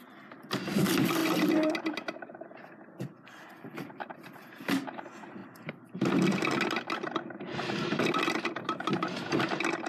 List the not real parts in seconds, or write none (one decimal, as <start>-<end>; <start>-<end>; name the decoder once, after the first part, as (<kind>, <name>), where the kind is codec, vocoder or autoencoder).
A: none

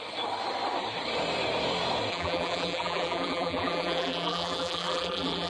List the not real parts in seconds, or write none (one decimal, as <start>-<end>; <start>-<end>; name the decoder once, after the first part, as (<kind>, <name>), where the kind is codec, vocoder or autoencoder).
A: 2.1-5.5 (vocoder, BigVGAN v2)

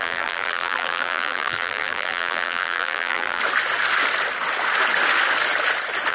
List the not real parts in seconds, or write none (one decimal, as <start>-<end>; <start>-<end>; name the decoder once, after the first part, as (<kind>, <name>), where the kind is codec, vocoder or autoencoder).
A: 0.0-3.4 (vocoder, BigVGAN v2)

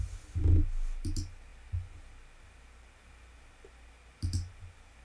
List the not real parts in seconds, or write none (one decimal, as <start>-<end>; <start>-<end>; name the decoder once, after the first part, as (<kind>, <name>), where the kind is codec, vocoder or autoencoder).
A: none

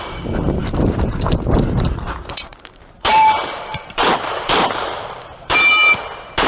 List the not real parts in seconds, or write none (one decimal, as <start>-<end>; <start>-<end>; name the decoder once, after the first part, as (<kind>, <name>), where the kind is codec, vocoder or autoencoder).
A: 0.0-6.5 (vocoder, BigVGAN v2)